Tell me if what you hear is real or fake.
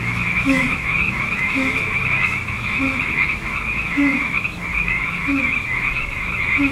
fake